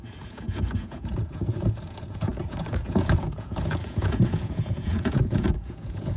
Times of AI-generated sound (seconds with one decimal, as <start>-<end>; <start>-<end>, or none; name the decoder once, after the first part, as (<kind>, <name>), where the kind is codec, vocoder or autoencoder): 0.0-6.2 (vocoder, Vocos)